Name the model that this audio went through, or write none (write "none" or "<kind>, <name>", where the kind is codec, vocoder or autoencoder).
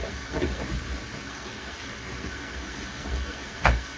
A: codec, SNAC